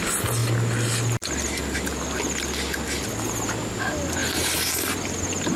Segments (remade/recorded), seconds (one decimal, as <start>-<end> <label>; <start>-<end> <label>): 0.0-4.2 recorded; 4.2-4.9 remade; 4.9-5.6 recorded